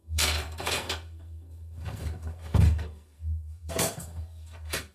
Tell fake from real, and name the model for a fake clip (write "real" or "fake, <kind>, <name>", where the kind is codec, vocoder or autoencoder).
fake, codec, SNAC